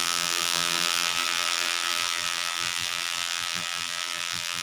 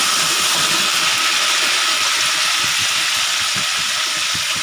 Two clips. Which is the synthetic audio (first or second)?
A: first